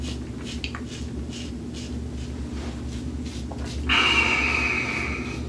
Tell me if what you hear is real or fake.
real